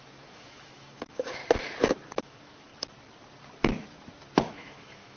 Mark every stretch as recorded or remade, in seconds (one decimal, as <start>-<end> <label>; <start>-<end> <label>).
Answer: 0.0-1.4 remade; 1.4-2.2 recorded; 2.2-2.7 remade; 2.7-4.4 recorded; 4.4-5.2 remade